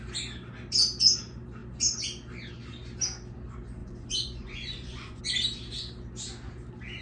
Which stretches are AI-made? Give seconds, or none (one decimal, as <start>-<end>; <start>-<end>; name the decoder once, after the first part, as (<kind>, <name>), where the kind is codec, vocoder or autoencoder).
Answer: 3.8-5.2 (vocoder, Vocos)